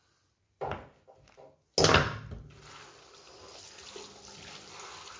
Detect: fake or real real